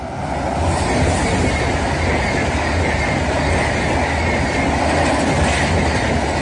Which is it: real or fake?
real